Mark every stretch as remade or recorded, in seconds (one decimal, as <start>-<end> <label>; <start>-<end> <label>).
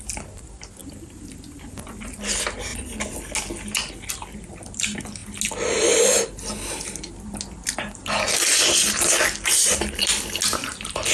0.0-0.8 recorded; 0.8-2.0 remade; 2.0-11.1 recorded